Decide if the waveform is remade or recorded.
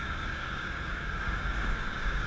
remade